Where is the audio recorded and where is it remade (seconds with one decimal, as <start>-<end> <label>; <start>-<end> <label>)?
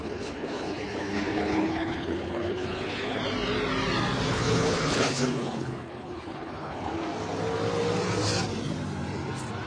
0.0-3.2 remade; 3.2-4.3 recorded; 4.3-6.9 remade; 6.9-9.7 recorded